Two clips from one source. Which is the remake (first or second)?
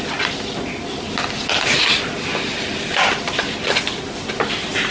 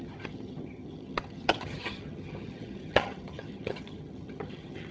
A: second